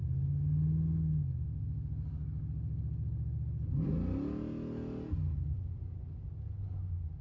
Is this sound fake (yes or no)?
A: no